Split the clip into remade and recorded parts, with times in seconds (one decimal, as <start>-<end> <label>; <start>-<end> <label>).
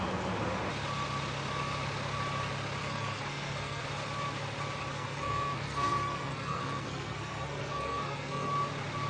0.0-2.8 recorded; 2.8-3.8 remade; 3.8-4.9 recorded; 4.9-8.5 remade; 8.5-9.1 recorded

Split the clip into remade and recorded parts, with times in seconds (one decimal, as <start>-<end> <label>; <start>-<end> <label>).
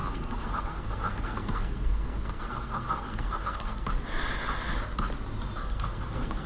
0.0-3.9 remade; 3.9-5.6 recorded; 5.6-6.5 remade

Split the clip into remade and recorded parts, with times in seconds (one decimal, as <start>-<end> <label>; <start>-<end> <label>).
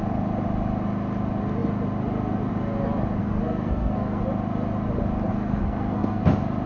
0.0-3.2 recorded; 3.2-4.2 remade; 4.2-5.3 recorded; 5.3-6.2 remade; 6.2-6.7 recorded